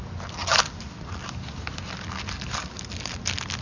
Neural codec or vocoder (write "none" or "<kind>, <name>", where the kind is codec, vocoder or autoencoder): none